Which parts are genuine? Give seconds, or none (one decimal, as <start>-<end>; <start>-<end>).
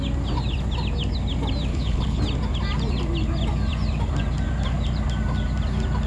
0.0-1.7; 2.2-6.1